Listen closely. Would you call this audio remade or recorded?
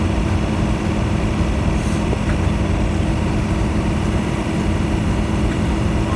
recorded